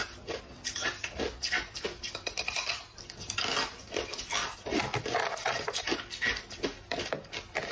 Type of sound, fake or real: real